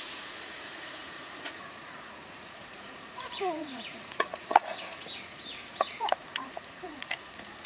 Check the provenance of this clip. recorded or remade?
remade